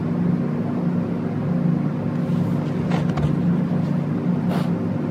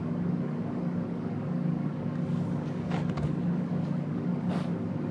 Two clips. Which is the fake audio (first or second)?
second